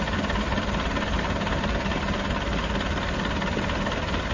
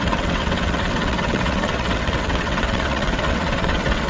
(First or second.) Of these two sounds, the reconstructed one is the second